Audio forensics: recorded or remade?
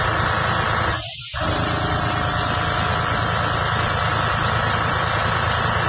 recorded